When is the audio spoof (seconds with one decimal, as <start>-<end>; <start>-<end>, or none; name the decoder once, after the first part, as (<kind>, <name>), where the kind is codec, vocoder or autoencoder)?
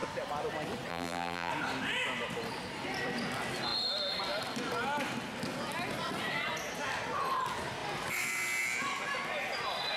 0.9-1.5 (vocoder, BigVGAN v2)